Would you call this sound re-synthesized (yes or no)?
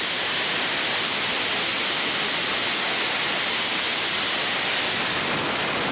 no